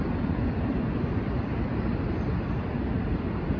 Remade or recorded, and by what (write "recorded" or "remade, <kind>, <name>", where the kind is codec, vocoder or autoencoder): recorded